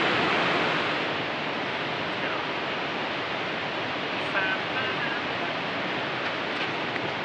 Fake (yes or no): no